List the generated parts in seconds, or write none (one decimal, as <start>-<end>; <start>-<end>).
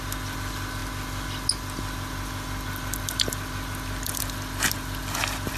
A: none